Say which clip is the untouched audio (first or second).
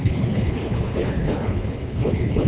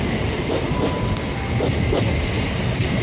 second